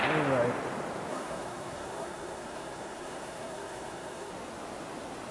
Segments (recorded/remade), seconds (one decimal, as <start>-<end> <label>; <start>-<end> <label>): 0.0-1.1 recorded; 1.1-4.3 remade; 4.3-5.3 recorded